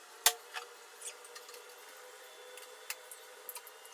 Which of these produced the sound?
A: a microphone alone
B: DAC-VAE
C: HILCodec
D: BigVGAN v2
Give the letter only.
A